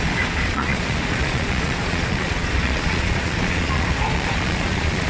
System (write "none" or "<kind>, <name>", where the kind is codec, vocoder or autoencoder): vocoder, Vocos